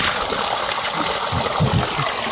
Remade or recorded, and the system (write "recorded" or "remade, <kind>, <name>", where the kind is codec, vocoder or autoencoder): recorded